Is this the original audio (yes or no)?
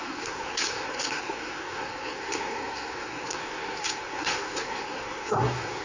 no